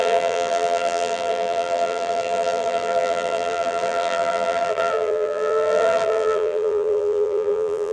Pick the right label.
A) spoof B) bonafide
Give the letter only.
A